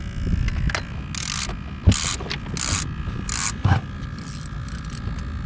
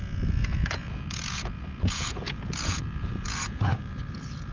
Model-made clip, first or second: second